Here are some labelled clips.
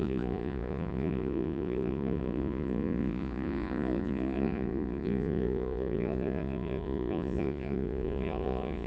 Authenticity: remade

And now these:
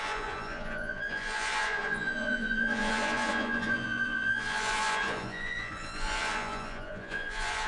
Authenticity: remade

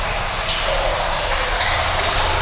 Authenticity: recorded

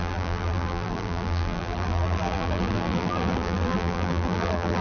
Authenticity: remade